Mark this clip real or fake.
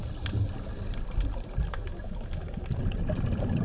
real